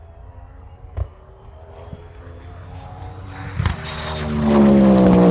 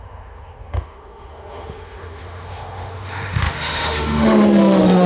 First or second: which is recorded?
first